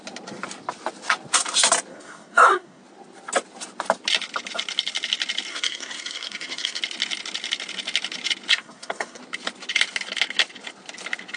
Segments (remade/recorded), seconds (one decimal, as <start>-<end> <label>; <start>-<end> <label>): 0.0-1.9 recorded; 1.9-2.8 remade; 2.8-5.5 recorded; 5.5-6.8 remade; 6.8-8.5 recorded; 8.5-9.2 remade; 9.2-11.4 recorded